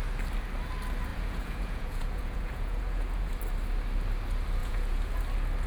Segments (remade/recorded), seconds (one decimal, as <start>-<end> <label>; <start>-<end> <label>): 0.0-1.1 recorded; 1.1-3.4 remade; 3.4-4.6 recorded; 4.6-5.2 remade; 5.2-5.7 recorded